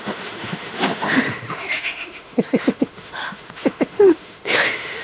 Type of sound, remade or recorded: remade